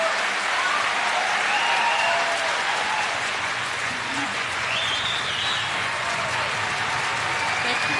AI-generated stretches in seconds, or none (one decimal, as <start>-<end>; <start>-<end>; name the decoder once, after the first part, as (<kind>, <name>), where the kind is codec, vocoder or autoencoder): 2.5-5.1 (vocoder, Vocos); 5.8-6.5